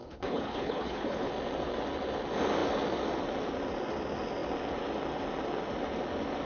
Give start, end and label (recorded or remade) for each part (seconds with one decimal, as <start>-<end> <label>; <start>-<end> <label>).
0.0-1.3 remade; 1.3-6.5 recorded